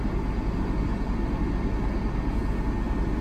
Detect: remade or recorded recorded